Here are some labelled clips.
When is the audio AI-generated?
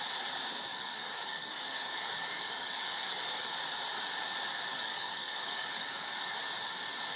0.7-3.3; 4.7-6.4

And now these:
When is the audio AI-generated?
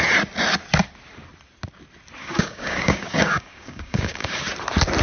2.2-4.4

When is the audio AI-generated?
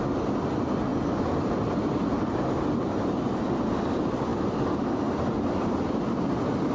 none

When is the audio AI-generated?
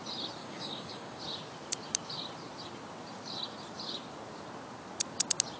0.4-1.2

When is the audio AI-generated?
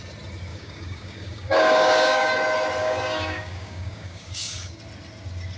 0.5-2.3; 2.8-4.8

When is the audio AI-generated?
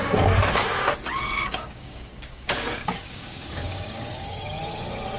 1.5-4.6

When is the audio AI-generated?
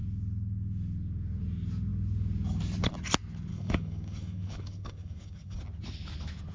3.5-5.6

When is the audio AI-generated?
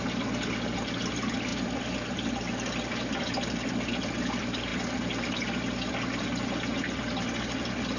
none